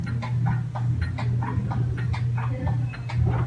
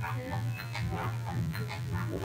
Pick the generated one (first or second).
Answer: second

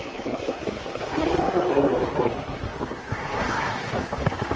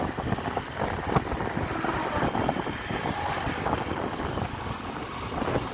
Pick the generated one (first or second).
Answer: first